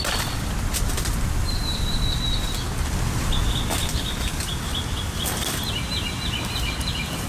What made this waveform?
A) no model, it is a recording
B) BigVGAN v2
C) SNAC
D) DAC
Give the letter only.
A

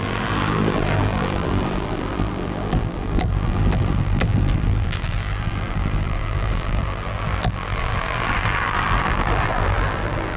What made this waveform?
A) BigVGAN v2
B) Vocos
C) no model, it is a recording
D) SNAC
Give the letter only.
A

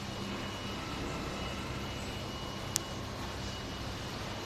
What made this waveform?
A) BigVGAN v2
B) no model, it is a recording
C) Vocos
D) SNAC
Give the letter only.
B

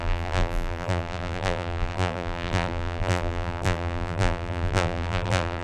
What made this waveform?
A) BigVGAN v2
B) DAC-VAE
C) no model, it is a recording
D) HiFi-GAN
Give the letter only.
A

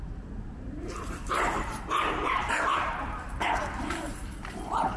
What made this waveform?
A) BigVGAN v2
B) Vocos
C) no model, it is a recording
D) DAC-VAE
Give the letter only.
A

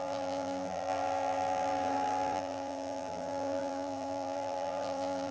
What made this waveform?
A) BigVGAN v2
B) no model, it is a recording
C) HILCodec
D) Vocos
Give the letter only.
A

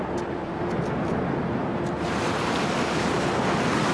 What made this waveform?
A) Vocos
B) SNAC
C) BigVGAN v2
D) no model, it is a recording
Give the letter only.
D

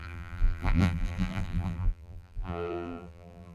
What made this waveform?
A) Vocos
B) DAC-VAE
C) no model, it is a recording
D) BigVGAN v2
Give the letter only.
D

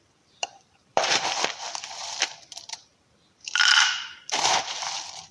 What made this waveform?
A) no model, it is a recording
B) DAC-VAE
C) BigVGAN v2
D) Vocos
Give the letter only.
C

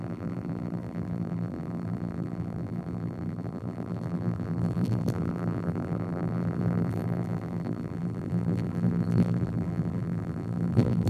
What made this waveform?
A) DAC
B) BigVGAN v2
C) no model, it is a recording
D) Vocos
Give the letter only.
B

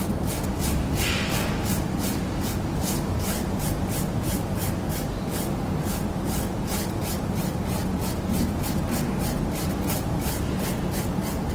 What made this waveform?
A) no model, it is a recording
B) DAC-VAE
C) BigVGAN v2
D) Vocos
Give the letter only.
A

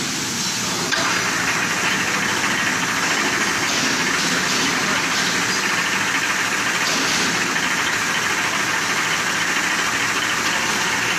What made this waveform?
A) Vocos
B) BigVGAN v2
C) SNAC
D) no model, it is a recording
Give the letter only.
D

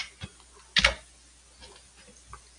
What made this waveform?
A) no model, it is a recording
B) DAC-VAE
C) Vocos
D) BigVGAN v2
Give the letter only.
A